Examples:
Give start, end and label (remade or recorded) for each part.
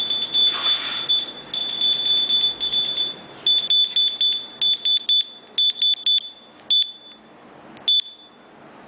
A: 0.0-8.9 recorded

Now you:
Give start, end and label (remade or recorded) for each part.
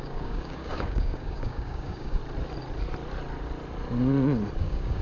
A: 0.0-2.2 remade; 2.2-4.6 recorded; 4.6-5.0 remade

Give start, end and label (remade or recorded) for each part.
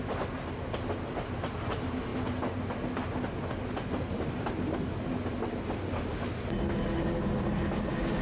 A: 0.0-8.2 recorded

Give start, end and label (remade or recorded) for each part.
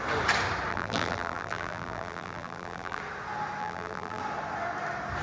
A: 0.0-0.7 recorded; 0.7-3.0 remade; 3.0-3.6 recorded; 3.6-4.2 remade; 4.2-5.2 recorded